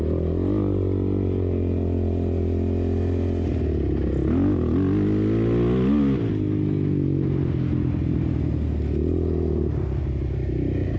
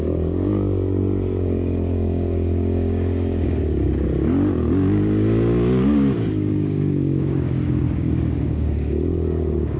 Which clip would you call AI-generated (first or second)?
second